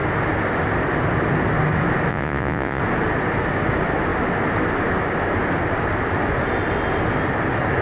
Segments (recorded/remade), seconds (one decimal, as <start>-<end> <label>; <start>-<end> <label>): 0.0-2.1 recorded; 2.1-2.8 remade; 2.8-7.8 recorded